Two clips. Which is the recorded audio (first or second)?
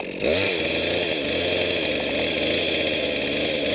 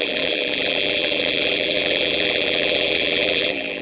first